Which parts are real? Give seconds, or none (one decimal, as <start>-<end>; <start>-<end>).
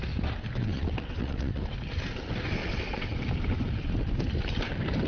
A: 0.0-0.6; 1.6-2.6; 3.2-5.1